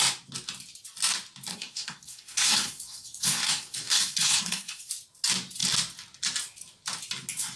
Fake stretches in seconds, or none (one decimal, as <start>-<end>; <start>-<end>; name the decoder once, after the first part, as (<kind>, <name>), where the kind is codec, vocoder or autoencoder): 1.5-4.9 (codec, SNAC)